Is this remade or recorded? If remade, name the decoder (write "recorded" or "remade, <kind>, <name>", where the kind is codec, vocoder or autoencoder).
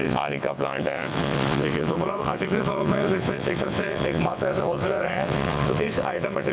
remade, vocoder, WaveNeXt